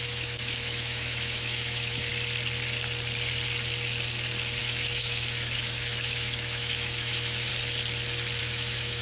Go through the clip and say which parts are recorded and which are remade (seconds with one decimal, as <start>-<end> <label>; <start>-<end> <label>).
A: 0.0-2.1 remade; 2.1-4.6 recorded; 4.6-7.5 remade; 7.5-8.4 recorded; 8.4-9.0 remade